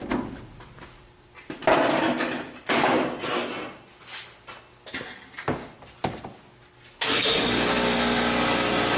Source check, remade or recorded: recorded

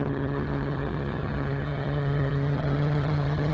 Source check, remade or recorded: remade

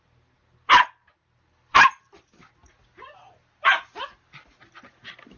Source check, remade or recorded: recorded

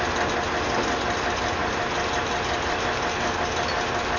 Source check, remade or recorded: recorded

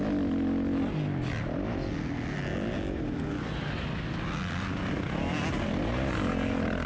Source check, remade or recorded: recorded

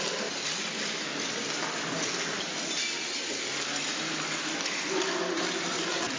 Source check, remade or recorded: recorded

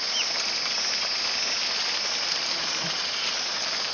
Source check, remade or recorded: recorded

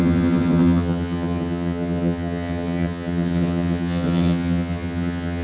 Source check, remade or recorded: remade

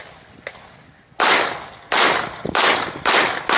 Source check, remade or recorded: recorded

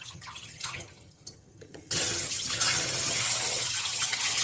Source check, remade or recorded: remade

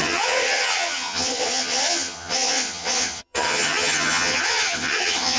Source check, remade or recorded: remade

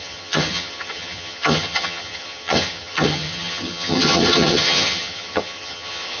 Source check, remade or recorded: remade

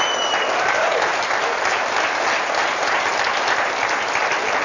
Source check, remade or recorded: recorded